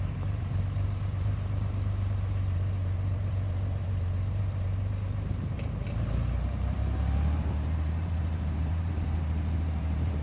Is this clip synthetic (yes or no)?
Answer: yes